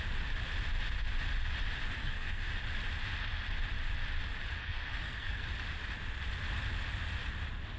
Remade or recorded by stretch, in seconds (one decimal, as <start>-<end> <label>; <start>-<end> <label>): 0.0-2.0 recorded; 2.0-2.5 remade; 2.5-4.6 recorded; 4.6-5.5 remade; 5.5-7.8 recorded